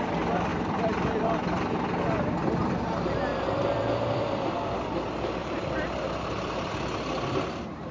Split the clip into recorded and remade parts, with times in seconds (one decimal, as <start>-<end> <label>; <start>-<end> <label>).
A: 0.0-0.5 recorded; 0.5-2.0 remade; 2.0-3.3 recorded; 3.3-4.9 remade; 4.9-5.4 recorded; 5.4-6.7 remade; 6.7-7.9 recorded